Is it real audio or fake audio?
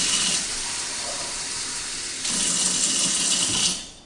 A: real